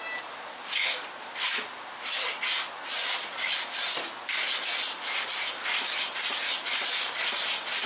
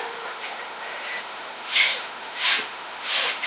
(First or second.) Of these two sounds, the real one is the first